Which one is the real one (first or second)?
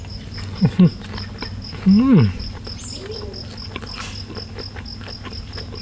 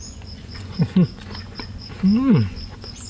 first